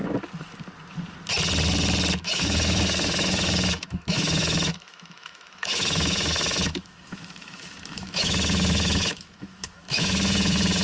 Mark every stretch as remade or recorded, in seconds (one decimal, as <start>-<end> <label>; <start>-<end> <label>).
0.0-2.2 recorded; 2.2-10.8 remade